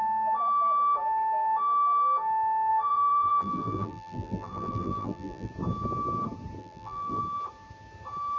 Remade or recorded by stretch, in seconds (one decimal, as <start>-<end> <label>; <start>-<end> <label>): 0.0-2.7 recorded; 2.7-5.5 remade; 5.5-6.6 recorded; 6.6-7.2 remade; 7.2-8.4 recorded